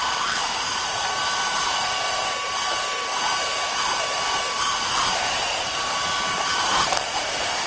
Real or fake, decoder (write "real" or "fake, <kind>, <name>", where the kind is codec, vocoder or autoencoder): fake, vocoder, BigVGAN v2